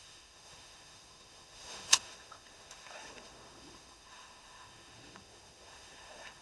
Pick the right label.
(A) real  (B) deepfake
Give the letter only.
B